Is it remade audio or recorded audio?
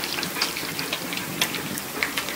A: recorded